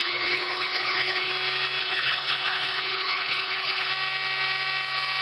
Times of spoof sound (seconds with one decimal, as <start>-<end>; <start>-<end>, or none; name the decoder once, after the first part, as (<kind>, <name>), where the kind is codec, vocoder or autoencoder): 0.0-1.3 (codec, HILCodec); 1.8-3.9